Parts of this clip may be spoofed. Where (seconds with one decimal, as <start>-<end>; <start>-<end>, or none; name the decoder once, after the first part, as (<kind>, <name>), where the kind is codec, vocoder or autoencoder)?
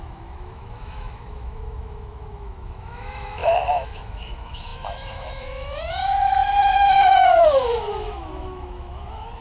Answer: 0.0-9.4 (autoencoder, DAC-VAE)